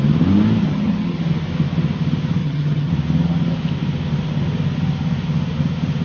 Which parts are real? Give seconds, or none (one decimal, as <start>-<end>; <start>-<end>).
0.0-0.6; 1.2-2.4; 2.9-6.0

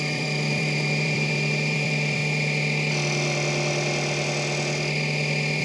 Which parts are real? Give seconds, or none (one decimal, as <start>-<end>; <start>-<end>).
2.2-5.6

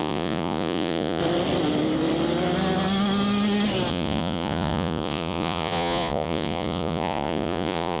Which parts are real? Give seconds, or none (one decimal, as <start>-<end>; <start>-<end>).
1.2-3.9

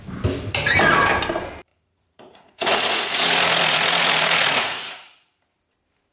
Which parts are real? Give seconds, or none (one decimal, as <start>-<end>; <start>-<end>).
0.0-1.7; 5.4-6.1

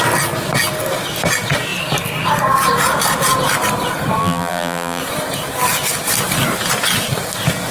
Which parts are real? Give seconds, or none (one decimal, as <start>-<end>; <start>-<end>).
0.0-4.2; 5.0-7.7

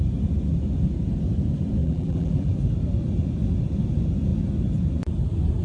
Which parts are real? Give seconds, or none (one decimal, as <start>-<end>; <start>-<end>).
0.0-1.8; 2.5-5.6

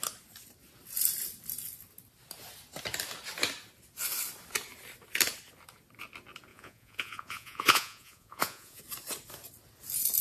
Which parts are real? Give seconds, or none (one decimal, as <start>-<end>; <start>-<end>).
0.0-6.5; 8.8-10.2